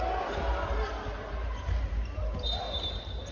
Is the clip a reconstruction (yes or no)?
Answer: no